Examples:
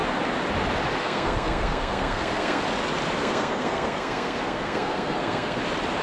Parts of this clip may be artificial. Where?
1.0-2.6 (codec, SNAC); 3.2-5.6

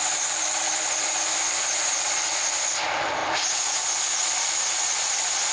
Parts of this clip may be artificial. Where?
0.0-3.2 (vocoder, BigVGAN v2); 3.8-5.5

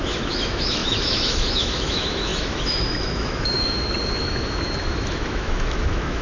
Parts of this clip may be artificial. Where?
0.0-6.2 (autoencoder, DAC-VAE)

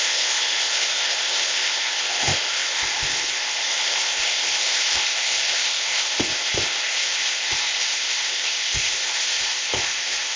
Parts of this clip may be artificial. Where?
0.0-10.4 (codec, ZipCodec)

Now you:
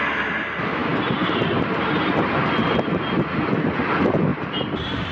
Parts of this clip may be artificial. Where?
4.3-5.1 (vocoder, BigVGAN v2)

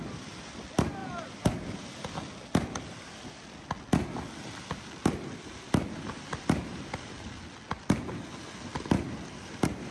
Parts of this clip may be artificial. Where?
6.7-7.3 (vocoder, BigVGAN v2)

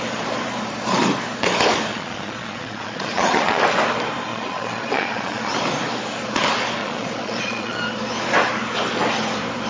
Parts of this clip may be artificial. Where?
1.9-3.6 (vocoder, Vocos); 4.3-5.5; 6.8-7.8